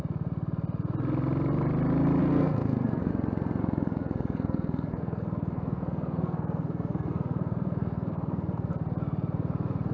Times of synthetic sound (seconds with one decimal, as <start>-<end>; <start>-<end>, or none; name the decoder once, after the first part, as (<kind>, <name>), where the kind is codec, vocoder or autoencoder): 2.2-3.1 (codec, SNAC); 3.6-8.7